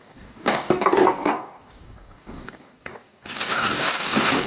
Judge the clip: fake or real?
fake